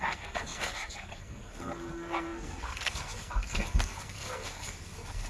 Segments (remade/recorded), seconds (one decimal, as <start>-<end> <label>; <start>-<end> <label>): 0.0-5.3 remade